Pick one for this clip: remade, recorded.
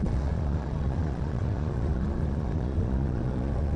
remade